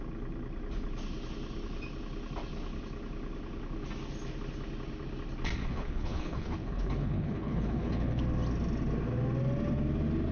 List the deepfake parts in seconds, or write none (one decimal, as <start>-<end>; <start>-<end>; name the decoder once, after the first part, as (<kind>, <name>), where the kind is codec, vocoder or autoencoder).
5.6-8.2 (codec, HILCodec)